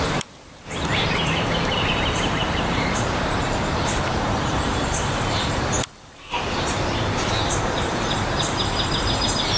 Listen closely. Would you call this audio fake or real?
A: fake